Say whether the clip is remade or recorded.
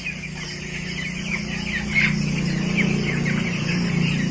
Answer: recorded